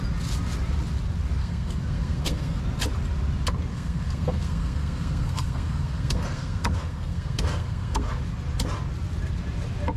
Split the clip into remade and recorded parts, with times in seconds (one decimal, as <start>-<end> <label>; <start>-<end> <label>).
0.0-1.4 recorded; 1.4-2.6 remade; 2.6-3.7 recorded; 3.7-8.2 remade; 8.2-10.0 recorded